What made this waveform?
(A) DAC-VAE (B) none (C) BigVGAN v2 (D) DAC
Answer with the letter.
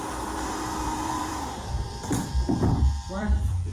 C